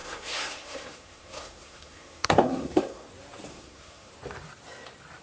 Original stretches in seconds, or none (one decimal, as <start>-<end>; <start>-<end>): 3.1-3.5; 4.1-5.2